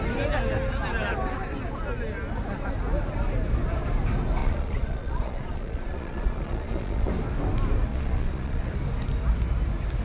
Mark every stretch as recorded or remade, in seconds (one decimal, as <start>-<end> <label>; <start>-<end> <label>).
0.0-4.4 recorded; 4.4-7.1 remade; 7.1-7.9 recorded; 7.9-8.7 remade; 8.7-10.0 recorded